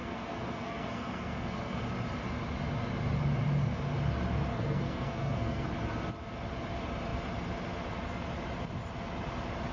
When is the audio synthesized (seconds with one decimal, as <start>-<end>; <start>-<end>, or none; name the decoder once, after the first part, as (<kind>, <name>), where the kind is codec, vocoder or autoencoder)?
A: 0.0-1.8 (codec, SNAC); 4.5-5.7